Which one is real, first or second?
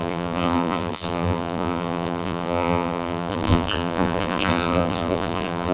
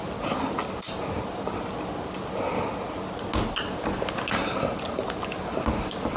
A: second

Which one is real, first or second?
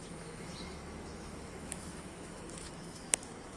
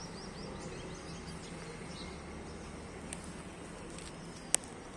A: second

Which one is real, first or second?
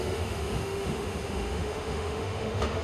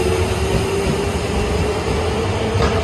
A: second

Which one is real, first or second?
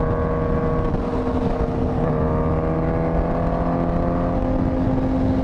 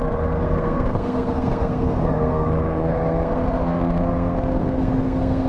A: first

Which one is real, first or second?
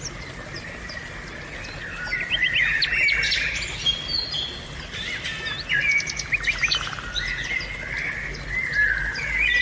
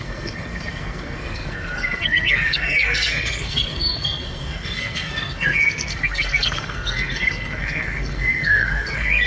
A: first